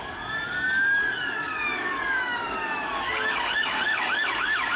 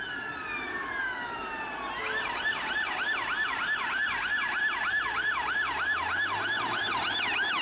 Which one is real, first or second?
second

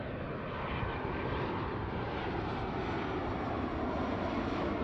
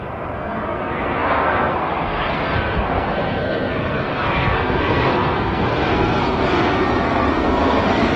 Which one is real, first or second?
first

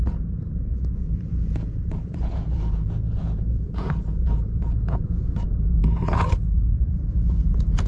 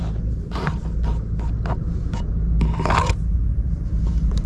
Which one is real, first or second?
second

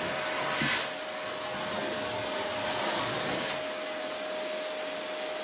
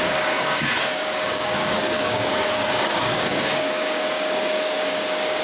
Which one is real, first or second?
first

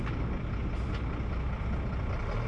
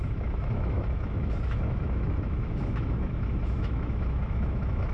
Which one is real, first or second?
first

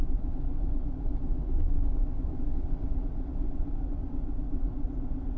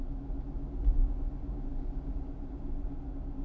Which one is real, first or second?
second